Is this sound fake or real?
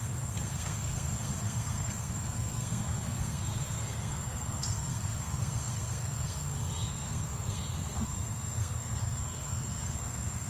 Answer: fake